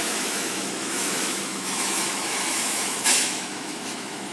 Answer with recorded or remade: remade